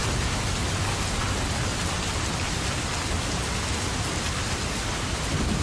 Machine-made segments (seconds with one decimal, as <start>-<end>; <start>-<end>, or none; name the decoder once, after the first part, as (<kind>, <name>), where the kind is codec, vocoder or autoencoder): none

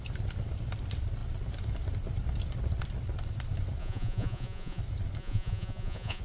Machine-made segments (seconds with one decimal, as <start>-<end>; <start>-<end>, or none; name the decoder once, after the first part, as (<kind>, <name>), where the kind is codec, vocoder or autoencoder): 3.8-4.8 (vocoder, Vocos); 5.2-6.2

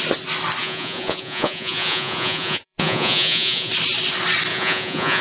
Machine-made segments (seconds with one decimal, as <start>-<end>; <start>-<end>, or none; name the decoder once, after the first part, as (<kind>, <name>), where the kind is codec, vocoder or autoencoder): 0.6-3.7 (vocoder, Vocos); 4.5-5.2